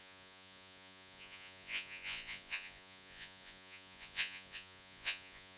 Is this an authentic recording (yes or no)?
no